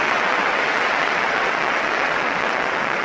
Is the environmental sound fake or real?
fake